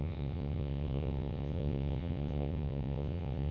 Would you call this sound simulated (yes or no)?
yes